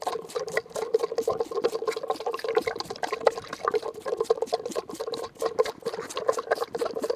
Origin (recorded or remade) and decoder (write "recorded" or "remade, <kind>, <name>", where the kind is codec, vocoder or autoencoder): remade, vocoder, BigVGAN v2